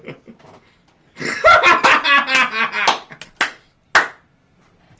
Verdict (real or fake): real